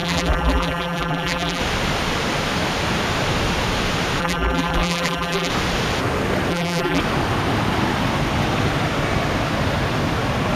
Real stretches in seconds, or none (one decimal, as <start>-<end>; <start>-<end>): 1.6-4.2; 5.5-6.5; 7.0-10.6